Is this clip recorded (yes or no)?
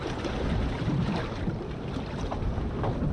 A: yes